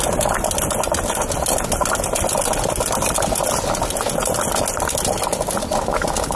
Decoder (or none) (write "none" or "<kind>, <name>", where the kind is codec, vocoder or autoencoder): none